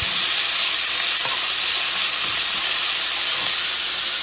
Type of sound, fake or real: real